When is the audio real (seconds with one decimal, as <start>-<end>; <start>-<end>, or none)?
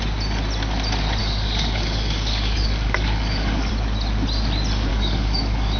0.0-1.2; 3.7-4.9